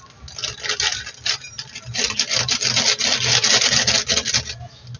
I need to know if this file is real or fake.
real